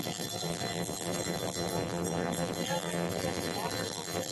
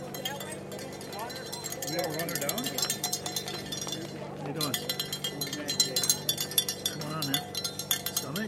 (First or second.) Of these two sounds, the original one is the second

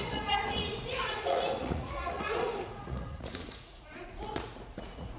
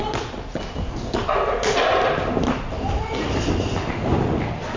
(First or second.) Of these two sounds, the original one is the second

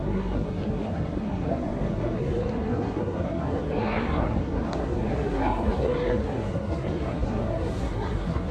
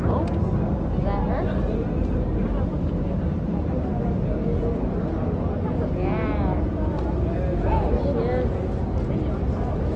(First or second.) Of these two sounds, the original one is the second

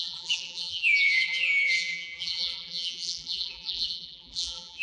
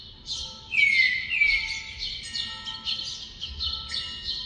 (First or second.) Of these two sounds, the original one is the second